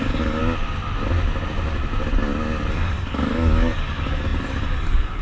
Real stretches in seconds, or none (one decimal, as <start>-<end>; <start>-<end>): 0.4-2.7